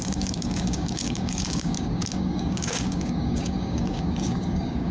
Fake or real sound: fake